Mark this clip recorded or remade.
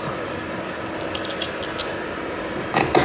recorded